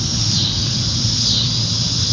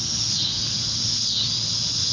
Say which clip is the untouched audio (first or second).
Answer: second